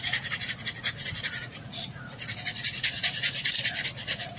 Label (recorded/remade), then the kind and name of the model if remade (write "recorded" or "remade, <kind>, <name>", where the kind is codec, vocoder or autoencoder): remade, vocoder, Vocos